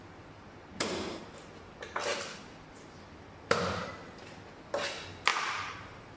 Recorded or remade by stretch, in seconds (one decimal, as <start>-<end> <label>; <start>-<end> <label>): 0.0-1.2 remade; 1.2-5.3 recorded; 5.3-5.8 remade; 5.8-6.2 recorded